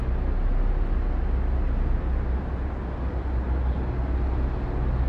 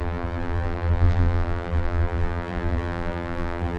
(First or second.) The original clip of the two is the first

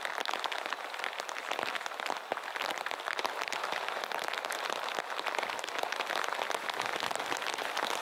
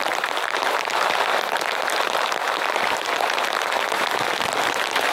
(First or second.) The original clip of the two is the first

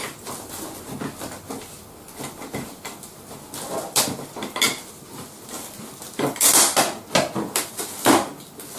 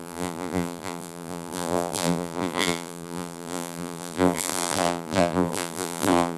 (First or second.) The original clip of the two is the first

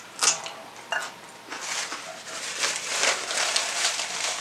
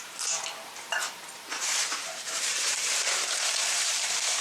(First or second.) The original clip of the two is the first